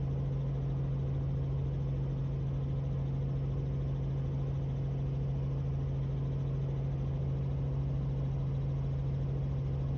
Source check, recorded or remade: recorded